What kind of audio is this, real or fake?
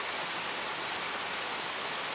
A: real